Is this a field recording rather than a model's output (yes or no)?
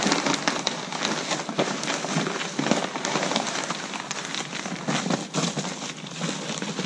yes